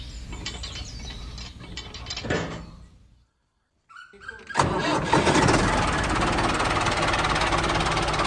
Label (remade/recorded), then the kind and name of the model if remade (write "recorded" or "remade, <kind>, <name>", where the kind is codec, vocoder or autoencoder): recorded